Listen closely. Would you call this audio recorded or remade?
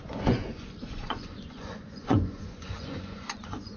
remade